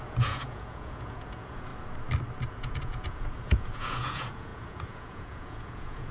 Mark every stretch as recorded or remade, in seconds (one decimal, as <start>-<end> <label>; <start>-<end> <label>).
0.0-1.7 remade; 1.7-2.5 recorded; 2.5-6.1 remade